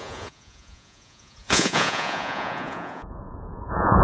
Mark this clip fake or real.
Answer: fake